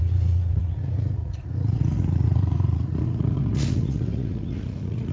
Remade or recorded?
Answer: remade